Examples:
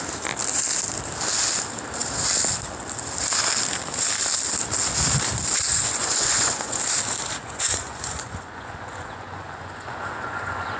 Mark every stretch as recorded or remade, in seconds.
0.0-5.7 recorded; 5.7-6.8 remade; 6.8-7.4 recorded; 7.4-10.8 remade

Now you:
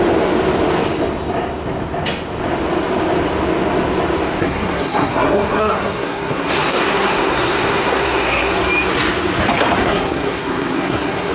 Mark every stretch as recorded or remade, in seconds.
0.0-4.4 recorded; 4.4-8.5 remade; 8.5-9.8 recorded; 9.8-11.3 remade

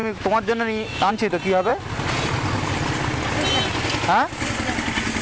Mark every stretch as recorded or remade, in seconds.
0.0-1.1 remade; 1.1-5.2 recorded

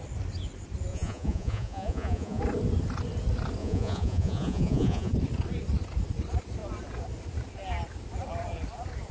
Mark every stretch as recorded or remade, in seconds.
0.0-0.9 recorded; 0.9-2.4 remade; 2.4-3.6 recorded; 3.6-5.1 remade; 5.1-9.1 recorded

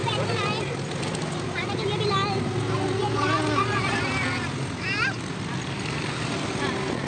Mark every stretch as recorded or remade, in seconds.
0.0-7.1 recorded

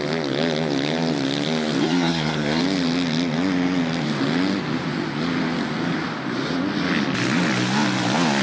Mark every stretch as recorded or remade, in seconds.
0.0-1.8 recorded; 1.8-2.6 remade; 2.6-8.4 recorded

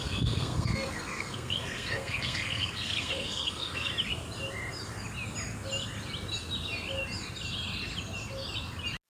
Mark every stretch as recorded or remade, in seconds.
0.0-3.9 remade; 3.9-9.1 recorded